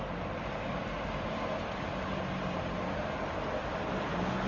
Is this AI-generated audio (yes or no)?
no